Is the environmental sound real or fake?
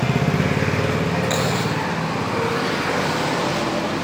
real